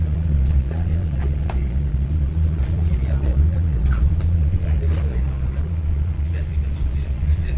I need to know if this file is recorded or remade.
remade